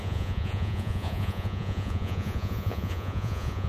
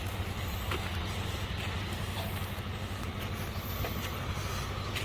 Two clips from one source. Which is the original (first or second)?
second